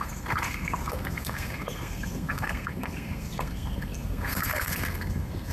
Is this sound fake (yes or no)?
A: yes